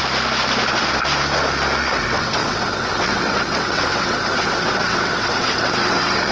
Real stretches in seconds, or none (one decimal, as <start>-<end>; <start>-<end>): 0.0-1.9